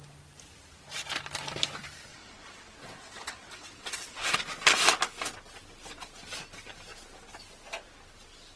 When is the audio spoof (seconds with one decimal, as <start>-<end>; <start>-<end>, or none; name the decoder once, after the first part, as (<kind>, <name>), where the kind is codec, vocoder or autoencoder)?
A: 2.1-4.4 (vocoder, WaveNeXt)